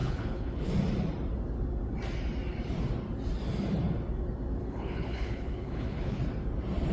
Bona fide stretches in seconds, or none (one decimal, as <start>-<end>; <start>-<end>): 0.7-4.6; 6.2-6.9